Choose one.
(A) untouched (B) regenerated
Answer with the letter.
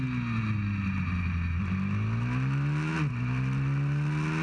A